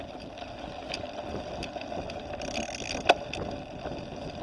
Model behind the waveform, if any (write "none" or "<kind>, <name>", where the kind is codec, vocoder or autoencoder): none